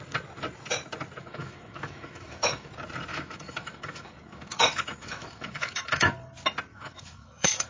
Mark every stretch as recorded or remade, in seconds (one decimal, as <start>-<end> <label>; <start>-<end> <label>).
0.0-1.2 recorded; 1.2-2.7 remade; 2.7-3.1 recorded; 3.1-6.1 remade; 6.1-6.7 recorded; 6.7-7.7 remade